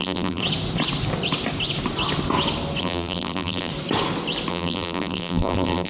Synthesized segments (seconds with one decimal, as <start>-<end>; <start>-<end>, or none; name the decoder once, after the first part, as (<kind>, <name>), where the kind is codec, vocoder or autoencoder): 0.0-0.4 (vocoder, BigVGAN v2); 2.8-3.7; 4.5-5.9